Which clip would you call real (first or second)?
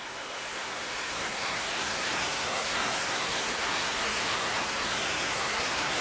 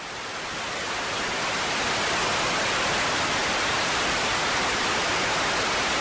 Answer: second